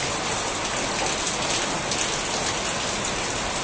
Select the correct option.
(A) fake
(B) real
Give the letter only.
B